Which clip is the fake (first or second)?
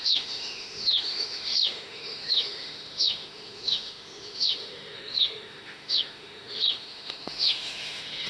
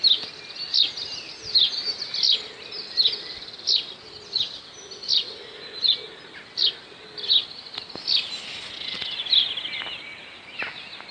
first